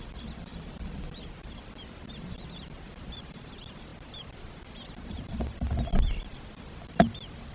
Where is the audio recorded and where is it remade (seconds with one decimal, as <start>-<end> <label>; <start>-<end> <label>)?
0.0-7.5 recorded